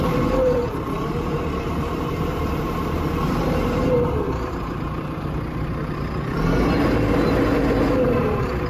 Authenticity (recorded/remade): remade